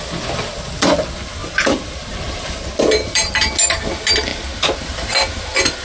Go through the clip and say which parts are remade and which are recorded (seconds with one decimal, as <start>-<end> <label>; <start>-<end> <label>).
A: 0.0-1.4 recorded; 1.4-3.5 remade; 3.5-4.3 recorded; 4.3-5.1 remade; 5.1-5.8 recorded